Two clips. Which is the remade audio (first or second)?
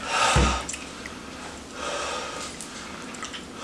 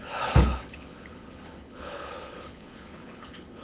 second